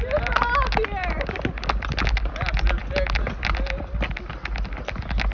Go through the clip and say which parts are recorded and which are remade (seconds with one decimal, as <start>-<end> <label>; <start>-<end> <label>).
0.0-5.3 recorded